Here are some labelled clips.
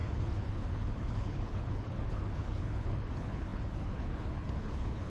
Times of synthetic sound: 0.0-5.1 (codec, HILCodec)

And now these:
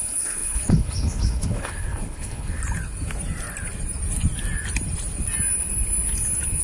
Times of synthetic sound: 0.0-2.6 (codec, HILCodec)